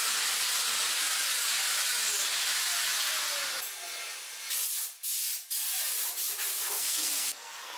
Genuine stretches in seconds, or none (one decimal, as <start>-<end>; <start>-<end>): 0.0-6.6